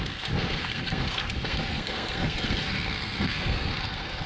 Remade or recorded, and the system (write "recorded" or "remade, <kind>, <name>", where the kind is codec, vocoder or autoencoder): remade, codec, SNAC